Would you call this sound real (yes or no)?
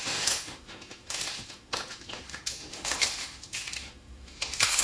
no